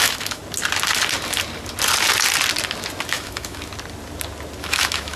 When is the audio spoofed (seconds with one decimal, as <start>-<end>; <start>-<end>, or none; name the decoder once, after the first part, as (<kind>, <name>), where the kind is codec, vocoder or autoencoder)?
0.0-0.4 (autoencoder, DAC-VAE); 3.1-3.7; 4.6-5.2